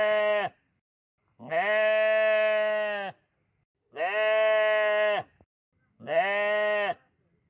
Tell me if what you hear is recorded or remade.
recorded